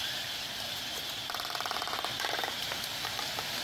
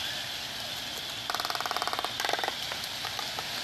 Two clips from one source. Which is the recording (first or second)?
second